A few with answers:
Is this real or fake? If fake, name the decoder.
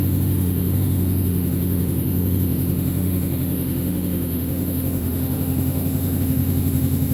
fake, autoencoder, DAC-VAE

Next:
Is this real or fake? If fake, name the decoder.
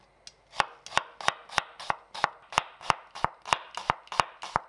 real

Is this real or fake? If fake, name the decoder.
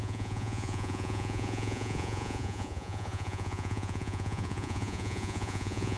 fake, vocoder, Vocos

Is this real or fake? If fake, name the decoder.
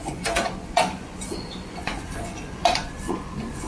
fake, vocoder, Vocos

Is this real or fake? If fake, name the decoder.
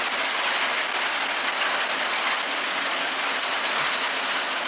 real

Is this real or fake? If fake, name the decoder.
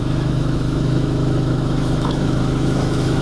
fake, autoencoder, DAC-VAE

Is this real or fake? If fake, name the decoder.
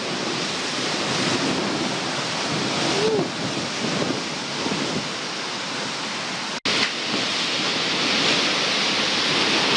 real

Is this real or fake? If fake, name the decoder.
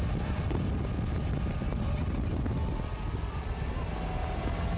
real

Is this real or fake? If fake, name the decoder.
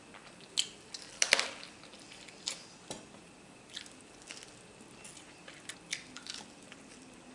real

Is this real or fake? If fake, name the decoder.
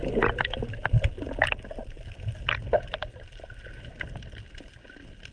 real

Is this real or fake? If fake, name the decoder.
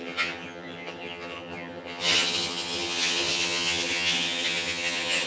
fake, vocoder, HiFi-GAN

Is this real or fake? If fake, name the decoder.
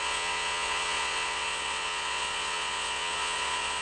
fake, vocoder, Vocos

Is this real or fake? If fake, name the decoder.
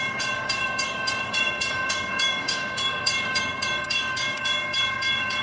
fake, codec, DAC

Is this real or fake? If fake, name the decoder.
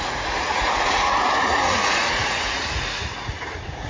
fake, vocoder, Vocos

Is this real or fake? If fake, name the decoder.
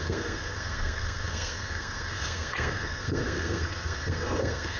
fake, codec, SNAC